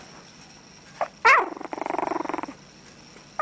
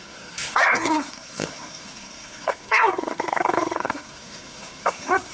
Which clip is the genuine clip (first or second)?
first